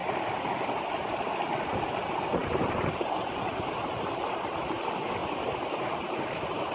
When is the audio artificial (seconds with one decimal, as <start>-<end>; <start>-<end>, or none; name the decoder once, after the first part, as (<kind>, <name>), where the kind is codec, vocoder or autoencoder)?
2.4-3.5 (vocoder, BigVGAN v2)